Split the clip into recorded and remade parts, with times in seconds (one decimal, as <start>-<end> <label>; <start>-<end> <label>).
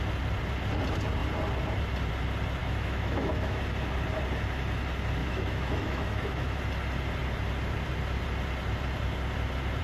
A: 0.0-2.6 recorded; 2.6-3.6 remade; 3.6-5.2 recorded; 5.2-6.6 remade; 6.6-9.8 recorded